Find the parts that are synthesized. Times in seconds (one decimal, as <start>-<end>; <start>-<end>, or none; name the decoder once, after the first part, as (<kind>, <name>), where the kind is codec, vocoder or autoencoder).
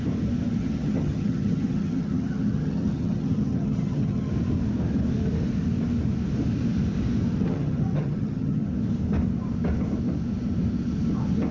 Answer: 0.6-4.3 (vocoder, HiFi-GAN); 7.4-8.7